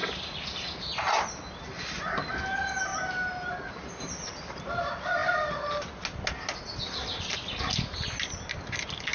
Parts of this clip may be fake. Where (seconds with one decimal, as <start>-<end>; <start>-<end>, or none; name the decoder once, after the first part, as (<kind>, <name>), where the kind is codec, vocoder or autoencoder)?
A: none